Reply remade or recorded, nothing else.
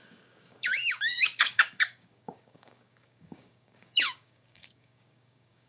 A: remade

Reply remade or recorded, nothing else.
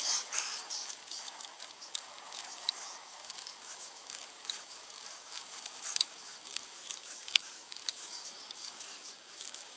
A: remade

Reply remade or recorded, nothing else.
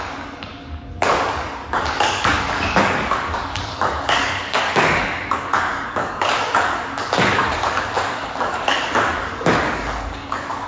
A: remade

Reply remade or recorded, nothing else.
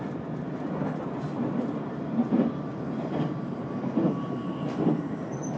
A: recorded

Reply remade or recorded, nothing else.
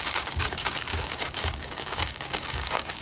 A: remade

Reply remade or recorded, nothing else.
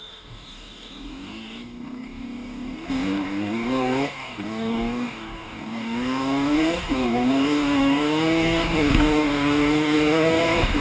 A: remade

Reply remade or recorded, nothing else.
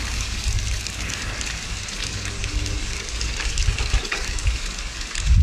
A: remade